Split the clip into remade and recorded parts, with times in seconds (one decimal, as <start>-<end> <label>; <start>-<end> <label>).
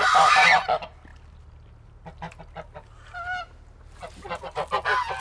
0.0-5.2 recorded